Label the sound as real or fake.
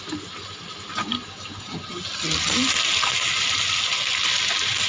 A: real